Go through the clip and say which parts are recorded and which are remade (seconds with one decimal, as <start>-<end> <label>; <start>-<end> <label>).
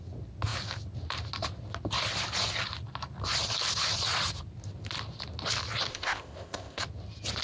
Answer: 0.0-5.9 recorded; 5.9-6.8 remade; 6.8-7.4 recorded